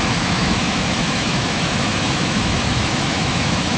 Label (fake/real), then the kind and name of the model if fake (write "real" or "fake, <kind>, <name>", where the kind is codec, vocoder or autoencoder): fake, autoencoder, DAC-VAE